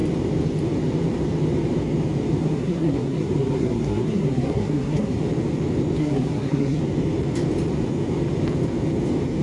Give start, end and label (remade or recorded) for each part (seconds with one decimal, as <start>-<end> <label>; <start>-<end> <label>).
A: 0.0-2.4 recorded; 2.4-5.2 remade; 5.2-6.0 recorded; 6.0-6.8 remade; 6.8-9.4 recorded